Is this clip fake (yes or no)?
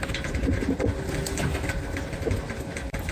no